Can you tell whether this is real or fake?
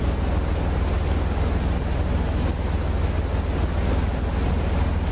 real